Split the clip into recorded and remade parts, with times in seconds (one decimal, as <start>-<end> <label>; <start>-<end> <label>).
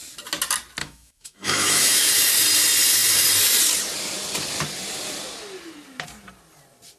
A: 0.0-0.8 recorded; 0.8-2.1 remade; 2.1-7.0 recorded